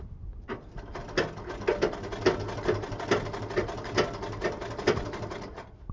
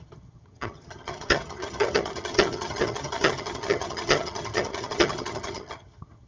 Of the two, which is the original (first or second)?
first